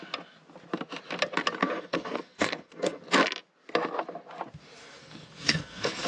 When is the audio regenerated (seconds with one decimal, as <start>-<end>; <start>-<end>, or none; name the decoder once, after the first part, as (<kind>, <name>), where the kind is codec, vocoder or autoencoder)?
1.6-3.0 (codec, SNAC); 4.8-6.1